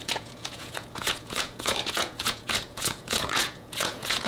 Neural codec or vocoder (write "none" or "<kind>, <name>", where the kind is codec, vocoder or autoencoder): vocoder, Vocos